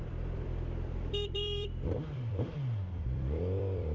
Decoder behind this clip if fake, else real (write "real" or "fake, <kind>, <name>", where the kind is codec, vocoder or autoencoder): fake, vocoder, BigVGAN v2